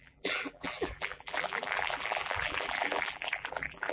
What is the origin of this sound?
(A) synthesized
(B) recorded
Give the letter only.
A